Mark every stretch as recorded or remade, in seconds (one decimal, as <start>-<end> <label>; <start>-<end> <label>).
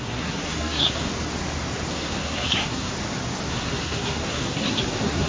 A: 0.0-1.1 remade; 1.1-1.9 recorded; 1.9-2.9 remade; 2.9-3.5 recorded; 3.5-5.3 remade